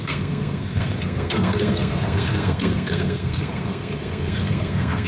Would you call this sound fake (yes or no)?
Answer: yes